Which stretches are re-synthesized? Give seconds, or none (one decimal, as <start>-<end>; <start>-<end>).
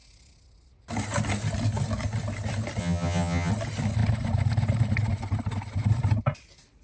2.8-3.5